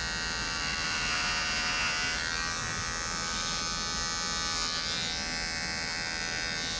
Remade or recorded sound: recorded